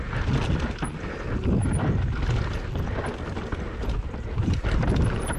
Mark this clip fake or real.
real